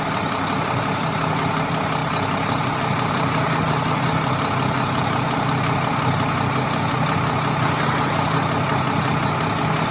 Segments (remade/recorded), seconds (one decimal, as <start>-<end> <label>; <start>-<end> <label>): 0.0-9.9 recorded